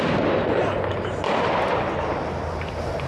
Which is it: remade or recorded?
recorded